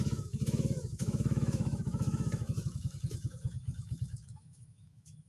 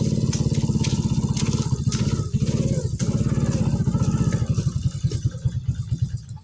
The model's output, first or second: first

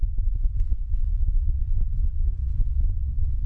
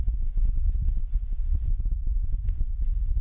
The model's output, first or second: first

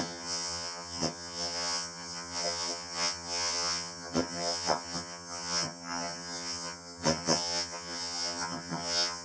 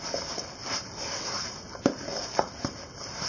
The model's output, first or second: first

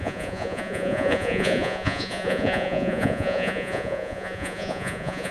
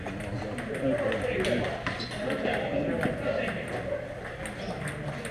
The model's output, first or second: first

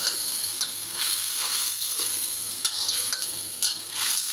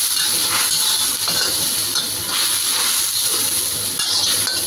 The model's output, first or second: first